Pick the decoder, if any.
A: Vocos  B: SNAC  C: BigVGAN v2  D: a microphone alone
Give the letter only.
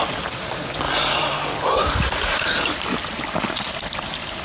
D